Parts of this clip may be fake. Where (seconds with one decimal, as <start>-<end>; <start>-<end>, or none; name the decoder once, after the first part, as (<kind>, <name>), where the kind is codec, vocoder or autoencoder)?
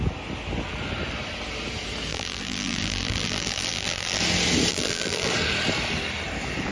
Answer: 2.1-4.2 (vocoder, BigVGAN v2); 4.7-5.3